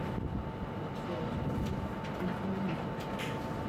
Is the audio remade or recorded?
recorded